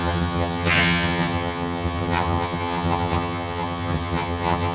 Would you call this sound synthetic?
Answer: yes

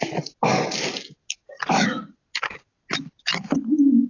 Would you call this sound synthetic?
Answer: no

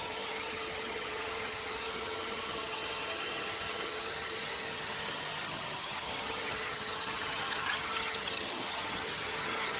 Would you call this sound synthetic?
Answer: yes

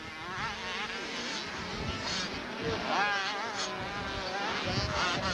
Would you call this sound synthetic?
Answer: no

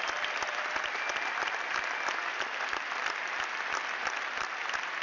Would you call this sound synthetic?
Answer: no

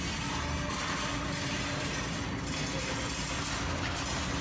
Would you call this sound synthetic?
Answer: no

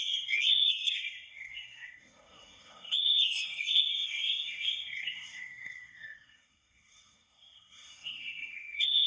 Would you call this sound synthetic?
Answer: yes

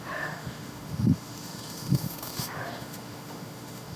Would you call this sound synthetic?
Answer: yes